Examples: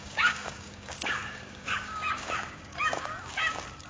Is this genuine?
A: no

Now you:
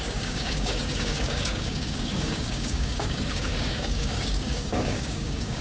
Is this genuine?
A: no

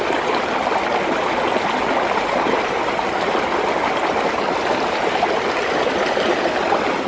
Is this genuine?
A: yes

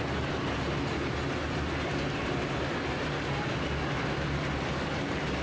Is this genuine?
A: yes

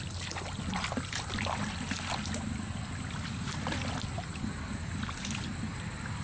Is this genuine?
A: yes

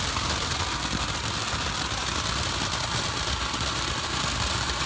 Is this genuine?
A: yes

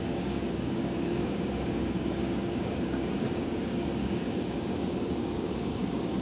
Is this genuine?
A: no